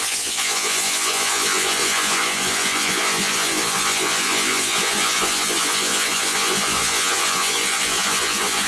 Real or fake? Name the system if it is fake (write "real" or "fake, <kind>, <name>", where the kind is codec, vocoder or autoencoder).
fake, vocoder, Vocos